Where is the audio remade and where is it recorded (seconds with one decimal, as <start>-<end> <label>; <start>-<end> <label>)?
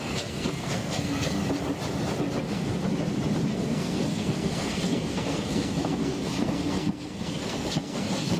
0.0-1.4 remade; 1.4-2.4 recorded; 2.4-2.8 remade; 2.8-3.5 recorded; 3.5-8.4 remade